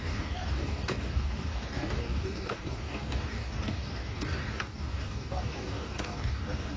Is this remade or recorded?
remade